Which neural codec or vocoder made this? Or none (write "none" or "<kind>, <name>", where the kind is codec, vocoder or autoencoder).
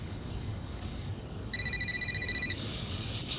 codec, DAC